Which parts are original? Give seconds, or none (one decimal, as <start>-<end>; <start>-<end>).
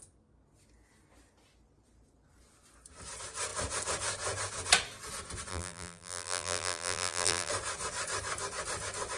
0.0-5.5; 7.5-9.2